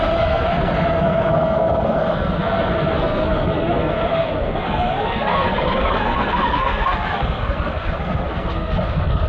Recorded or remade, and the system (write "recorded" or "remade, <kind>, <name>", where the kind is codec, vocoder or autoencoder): remade, codec, SNAC